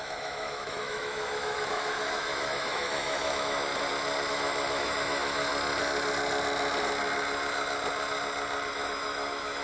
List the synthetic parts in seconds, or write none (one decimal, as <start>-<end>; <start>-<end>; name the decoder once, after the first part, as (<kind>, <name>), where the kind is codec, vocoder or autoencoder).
0.0-3.7 (autoencoder, DAC-VAE); 4.3-5.5; 8.7-9.6